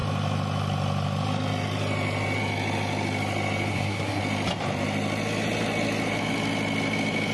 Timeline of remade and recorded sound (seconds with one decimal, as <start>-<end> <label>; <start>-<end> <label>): 0.0-3.7 recorded; 3.7-4.2 remade; 4.2-7.3 recorded